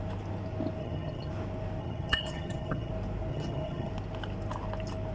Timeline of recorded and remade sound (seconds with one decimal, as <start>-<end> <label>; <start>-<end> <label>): 0.0-0.8 recorded; 0.8-1.3 remade; 1.3-1.8 recorded; 1.8-2.9 remade; 2.9-3.3 recorded; 3.3-3.9 remade; 3.9-5.1 recorded